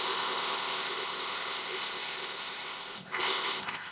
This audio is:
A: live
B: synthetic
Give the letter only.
B